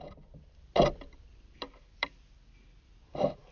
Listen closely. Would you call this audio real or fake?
fake